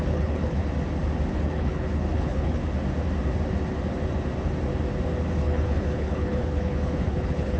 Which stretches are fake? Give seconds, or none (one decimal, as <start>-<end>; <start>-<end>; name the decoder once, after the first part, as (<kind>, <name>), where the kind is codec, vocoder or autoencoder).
0.0-0.6 (codec, HILCodec); 1.3-2.6; 5.3-7.6